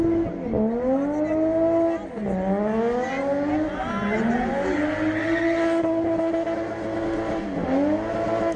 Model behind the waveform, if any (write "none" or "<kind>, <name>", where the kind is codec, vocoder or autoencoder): none